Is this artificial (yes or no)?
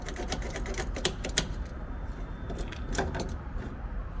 yes